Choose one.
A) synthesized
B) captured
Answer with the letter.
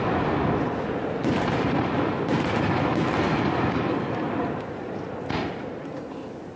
B